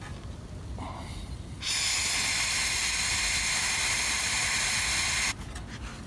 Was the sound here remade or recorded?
recorded